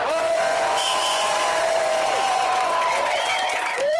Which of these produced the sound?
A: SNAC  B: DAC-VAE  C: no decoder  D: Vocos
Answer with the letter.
D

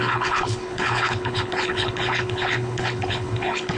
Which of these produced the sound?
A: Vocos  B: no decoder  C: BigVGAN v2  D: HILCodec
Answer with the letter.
D